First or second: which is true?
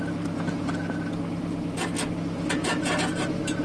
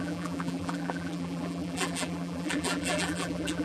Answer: first